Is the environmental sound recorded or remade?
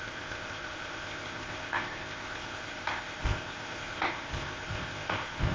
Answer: remade